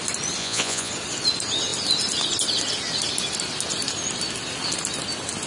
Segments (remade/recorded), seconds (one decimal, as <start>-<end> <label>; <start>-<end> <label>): 0.0-0.4 recorded; 0.4-0.9 remade; 0.9-5.5 recorded